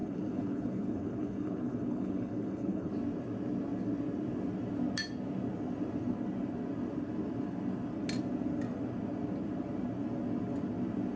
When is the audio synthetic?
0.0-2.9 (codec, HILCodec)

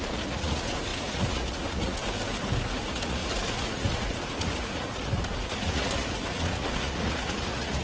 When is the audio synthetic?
0.0-2.0 (vocoder, Vocos); 2.8-7.8

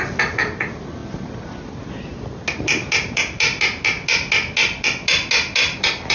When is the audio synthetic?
none

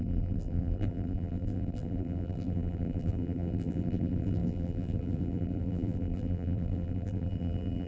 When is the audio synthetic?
0.0-7.9 (vocoder, BigVGAN v2)